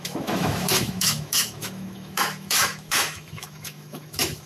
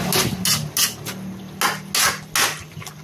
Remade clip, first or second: first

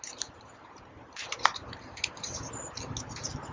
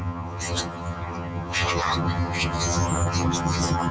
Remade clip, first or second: second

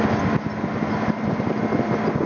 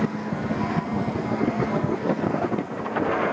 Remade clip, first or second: second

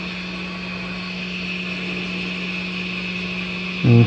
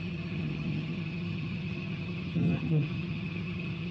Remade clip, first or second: second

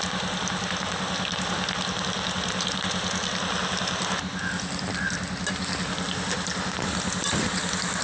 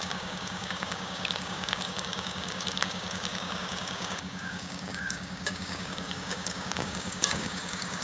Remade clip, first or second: second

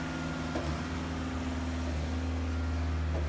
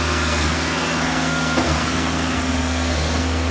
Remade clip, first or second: second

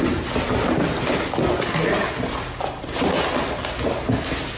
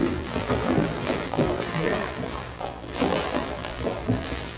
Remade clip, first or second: second